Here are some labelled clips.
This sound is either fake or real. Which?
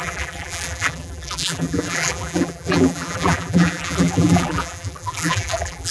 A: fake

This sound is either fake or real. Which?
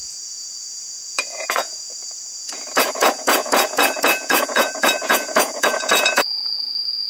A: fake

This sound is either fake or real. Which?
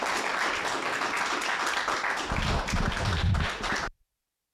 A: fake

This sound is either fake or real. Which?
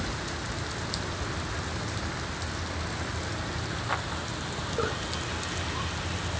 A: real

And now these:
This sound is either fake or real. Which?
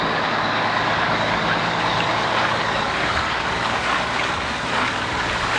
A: fake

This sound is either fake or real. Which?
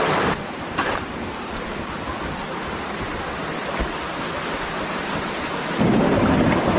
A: real